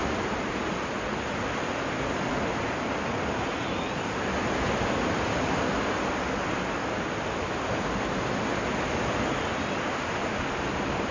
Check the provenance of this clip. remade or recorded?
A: recorded